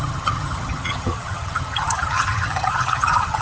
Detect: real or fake fake